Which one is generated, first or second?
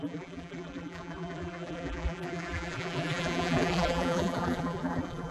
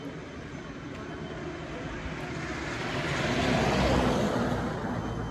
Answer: first